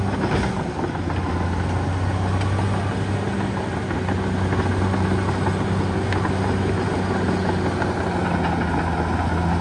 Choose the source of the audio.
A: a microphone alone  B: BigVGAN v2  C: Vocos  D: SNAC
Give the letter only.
A